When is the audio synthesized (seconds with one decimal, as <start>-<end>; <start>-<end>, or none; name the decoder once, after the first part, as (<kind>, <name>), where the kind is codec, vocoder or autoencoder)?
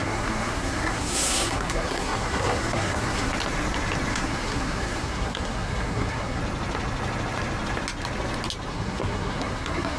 0.0-3.3 (codec, SNAC); 4.1-6.4; 8.7-10.0